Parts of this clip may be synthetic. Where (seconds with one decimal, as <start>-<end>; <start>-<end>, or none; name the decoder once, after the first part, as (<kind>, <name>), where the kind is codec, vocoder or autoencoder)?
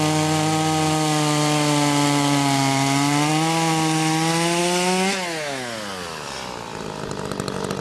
none